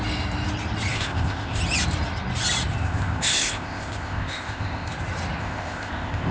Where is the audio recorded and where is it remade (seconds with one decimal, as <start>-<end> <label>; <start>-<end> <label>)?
0.0-0.9 recorded; 0.9-1.6 remade; 1.6-2.8 recorded; 2.8-4.9 remade; 4.9-5.4 recorded; 5.4-6.3 remade